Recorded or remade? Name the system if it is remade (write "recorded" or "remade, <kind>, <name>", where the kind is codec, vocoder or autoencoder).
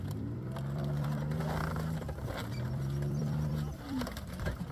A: remade, vocoder, BigVGAN v2